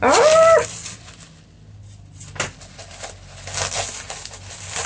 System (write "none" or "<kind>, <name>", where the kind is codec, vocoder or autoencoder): none